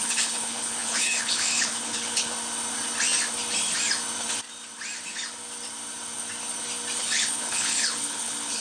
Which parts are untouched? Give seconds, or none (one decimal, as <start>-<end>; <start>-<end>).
2.3-7.0